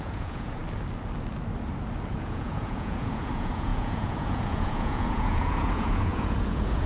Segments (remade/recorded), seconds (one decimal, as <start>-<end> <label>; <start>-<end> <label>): 0.0-0.6 remade; 0.6-2.1 recorded; 2.1-6.9 remade